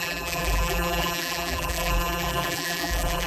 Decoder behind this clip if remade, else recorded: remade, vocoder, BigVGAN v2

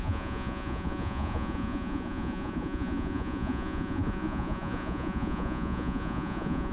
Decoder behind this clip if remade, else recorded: remade, vocoder, Vocos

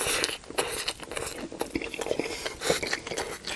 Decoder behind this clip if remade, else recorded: recorded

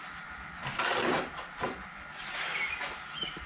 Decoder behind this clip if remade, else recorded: recorded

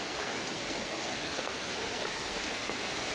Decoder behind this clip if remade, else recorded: remade, codec, SNAC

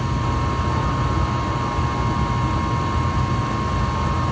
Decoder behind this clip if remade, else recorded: recorded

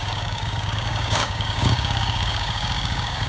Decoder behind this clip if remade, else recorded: remade, codec, DAC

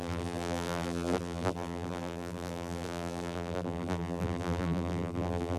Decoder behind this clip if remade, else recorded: remade, vocoder, BigVGAN v2